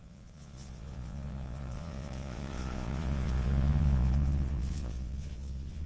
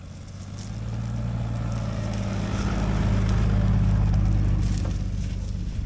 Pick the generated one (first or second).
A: first